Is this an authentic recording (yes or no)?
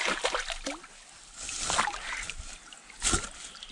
yes